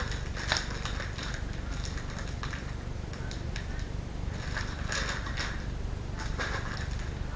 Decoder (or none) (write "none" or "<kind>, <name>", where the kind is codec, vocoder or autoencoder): none